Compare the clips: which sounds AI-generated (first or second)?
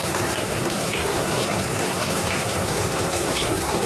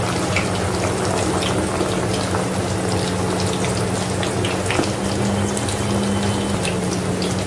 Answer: first